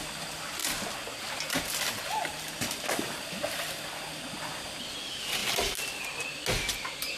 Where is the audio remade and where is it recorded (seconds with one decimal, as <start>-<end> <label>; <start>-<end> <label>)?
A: 0.0-7.2 recorded